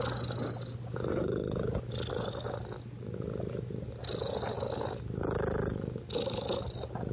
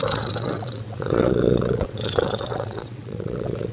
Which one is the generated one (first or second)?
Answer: second